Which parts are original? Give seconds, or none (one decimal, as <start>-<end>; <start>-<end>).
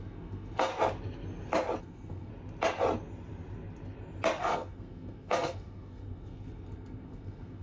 0.7-1.8; 2.3-4.4